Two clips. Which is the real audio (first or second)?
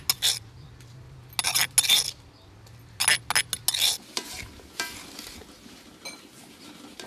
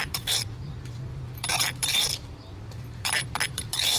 first